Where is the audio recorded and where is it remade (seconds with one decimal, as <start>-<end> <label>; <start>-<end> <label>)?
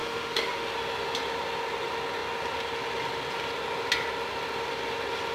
0.0-0.7 remade; 0.7-5.3 recorded